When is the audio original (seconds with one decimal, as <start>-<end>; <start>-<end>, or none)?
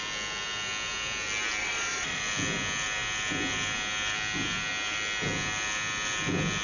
0.0-1.6; 2.2-6.6